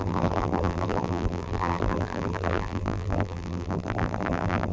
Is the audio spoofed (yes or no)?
yes